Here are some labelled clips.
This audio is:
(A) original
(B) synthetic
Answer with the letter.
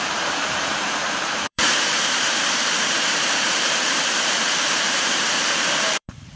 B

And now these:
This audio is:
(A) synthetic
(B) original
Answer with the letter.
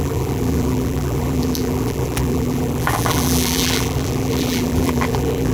A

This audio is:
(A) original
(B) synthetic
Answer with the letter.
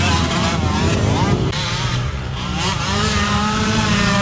B